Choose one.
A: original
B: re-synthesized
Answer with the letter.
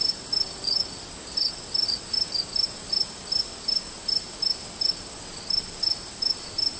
A